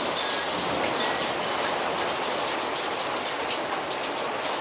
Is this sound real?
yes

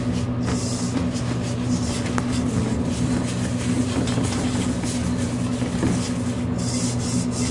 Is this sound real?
yes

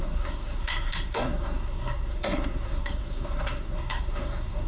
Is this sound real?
no